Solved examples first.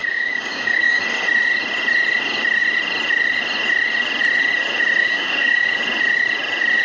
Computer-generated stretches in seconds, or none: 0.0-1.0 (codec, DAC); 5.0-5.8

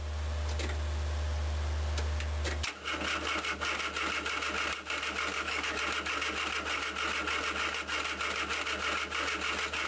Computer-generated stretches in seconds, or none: 5.3-5.8 (codec, DAC)

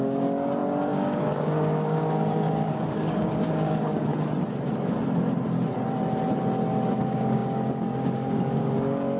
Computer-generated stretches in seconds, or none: 0.0-4.1 (codec, DAC); 7.0-9.2

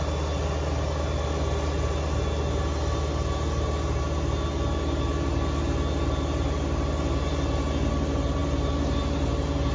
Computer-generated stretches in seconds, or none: none

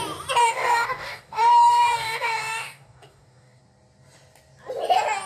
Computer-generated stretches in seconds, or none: 0.4-3.6 (codec, DAC)

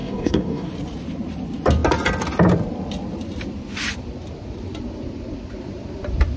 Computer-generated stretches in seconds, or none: 0.0-0.7 (codec, DAC)

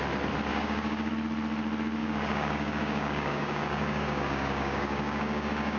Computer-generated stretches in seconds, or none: 0.5-1.1 (codec, DAC); 2.0-5.8

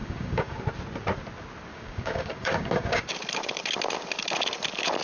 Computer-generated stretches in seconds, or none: 0.0-0.6 (codec, DAC); 1.7-3.1